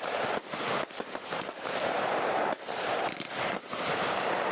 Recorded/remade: remade